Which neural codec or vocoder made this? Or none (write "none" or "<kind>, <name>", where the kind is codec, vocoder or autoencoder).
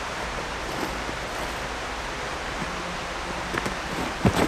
none